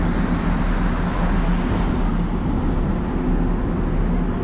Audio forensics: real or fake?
real